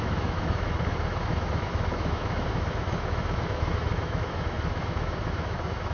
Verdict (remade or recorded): remade